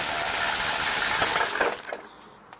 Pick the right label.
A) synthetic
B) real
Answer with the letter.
B